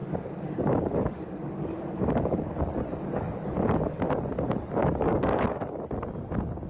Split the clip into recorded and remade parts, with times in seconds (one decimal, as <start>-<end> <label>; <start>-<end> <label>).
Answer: 0.0-4.0 remade; 4.0-4.8 recorded; 4.8-5.9 remade; 5.9-6.7 recorded